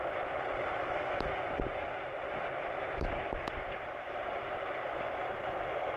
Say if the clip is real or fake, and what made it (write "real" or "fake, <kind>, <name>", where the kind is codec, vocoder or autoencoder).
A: real